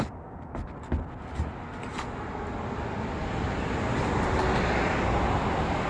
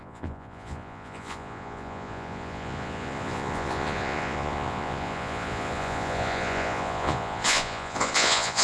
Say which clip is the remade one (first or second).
second